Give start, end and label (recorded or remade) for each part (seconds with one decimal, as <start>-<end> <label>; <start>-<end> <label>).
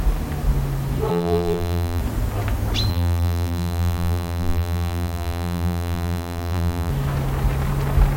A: 0.0-1.1 recorded; 1.1-2.0 remade; 2.0-2.9 recorded; 2.9-6.9 remade; 6.9-8.2 recorded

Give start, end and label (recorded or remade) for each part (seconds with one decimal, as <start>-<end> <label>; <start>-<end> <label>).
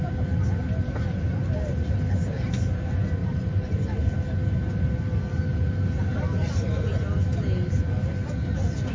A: 0.0-3.2 recorded; 3.2-3.9 remade; 3.9-8.9 recorded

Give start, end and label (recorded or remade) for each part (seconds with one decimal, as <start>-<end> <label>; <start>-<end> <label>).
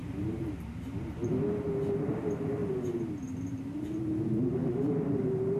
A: 0.0-5.6 recorded